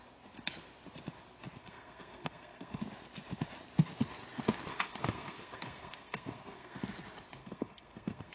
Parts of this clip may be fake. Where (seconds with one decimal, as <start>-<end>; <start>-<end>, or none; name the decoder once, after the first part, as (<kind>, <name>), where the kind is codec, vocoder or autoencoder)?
1.6-2.8 (codec, SNAC); 4.7-6.8; 7.4-8.3